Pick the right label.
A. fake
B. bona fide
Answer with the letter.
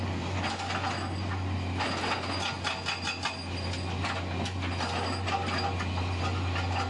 B